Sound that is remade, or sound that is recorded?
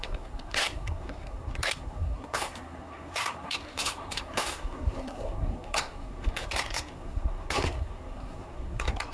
remade